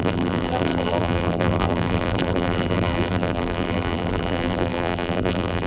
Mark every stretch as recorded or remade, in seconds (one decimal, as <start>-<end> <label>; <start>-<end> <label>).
0.0-5.7 remade